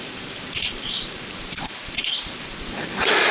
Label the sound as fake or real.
fake